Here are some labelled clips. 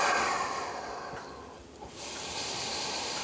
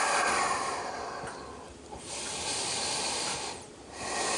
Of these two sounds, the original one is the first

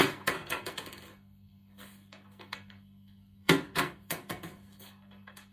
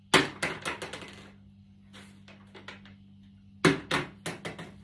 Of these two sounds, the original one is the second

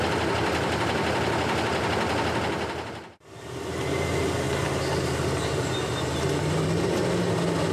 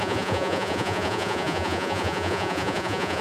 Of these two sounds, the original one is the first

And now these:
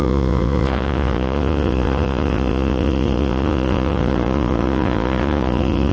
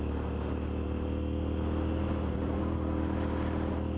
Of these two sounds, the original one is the second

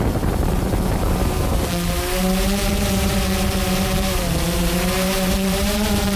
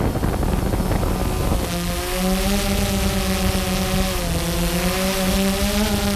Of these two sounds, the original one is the second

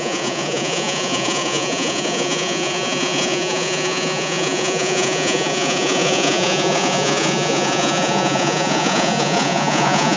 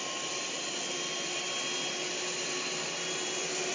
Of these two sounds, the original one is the second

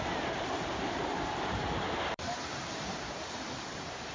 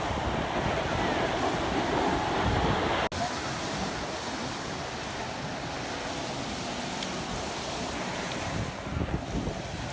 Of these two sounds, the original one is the second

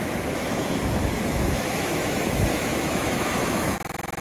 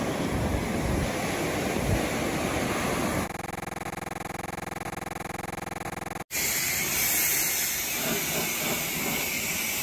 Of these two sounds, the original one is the second